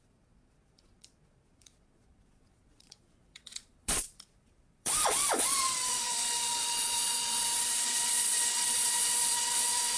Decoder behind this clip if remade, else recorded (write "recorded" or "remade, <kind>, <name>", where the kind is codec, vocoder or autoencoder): remade, vocoder, Vocos